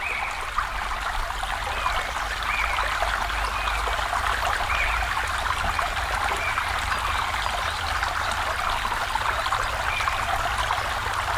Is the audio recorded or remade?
recorded